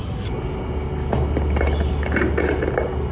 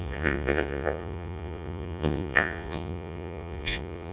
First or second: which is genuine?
first